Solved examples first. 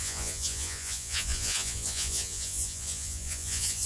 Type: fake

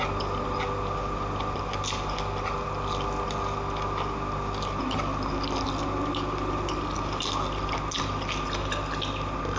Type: real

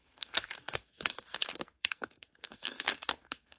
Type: fake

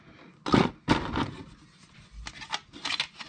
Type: real